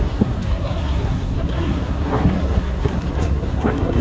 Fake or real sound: fake